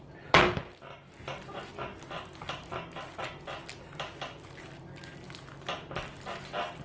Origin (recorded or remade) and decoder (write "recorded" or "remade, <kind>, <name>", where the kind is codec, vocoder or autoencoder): recorded